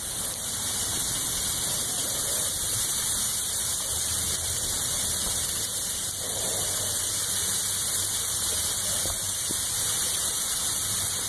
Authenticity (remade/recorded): remade